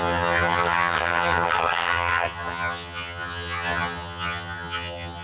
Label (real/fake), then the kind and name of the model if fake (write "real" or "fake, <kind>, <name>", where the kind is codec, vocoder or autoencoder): fake, vocoder, HiFi-GAN